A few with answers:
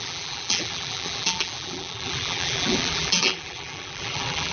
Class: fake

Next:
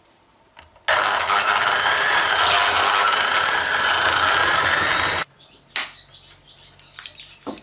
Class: real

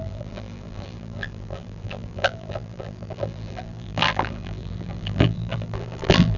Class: fake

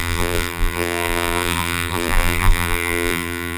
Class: fake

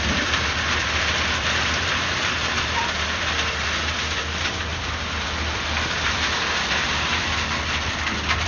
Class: fake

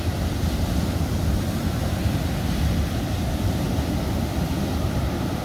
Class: real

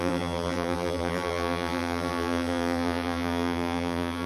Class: fake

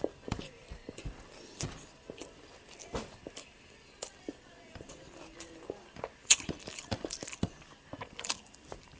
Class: fake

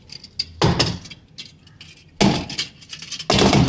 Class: real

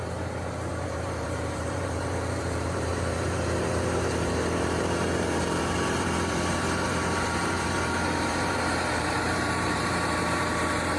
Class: fake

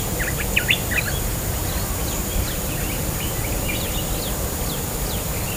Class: real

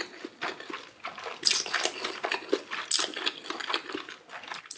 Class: real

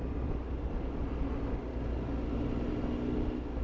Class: real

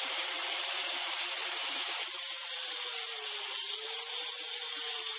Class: fake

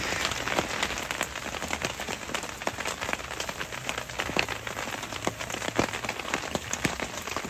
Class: real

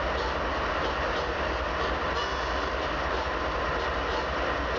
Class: real